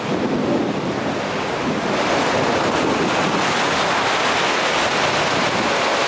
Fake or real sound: real